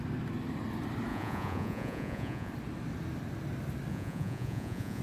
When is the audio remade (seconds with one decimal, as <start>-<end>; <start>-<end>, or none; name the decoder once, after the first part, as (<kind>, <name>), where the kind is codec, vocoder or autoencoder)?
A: 1.1-2.5 (vocoder, Vocos); 3.9-5.0